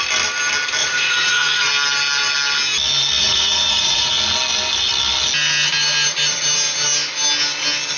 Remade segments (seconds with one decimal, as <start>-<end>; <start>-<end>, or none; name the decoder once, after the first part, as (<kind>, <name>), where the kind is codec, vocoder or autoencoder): 0.8-1.7 (vocoder, Vocos); 3.2-4.1